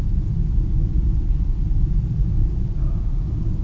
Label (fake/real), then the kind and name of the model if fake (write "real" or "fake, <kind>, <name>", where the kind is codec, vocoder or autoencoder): real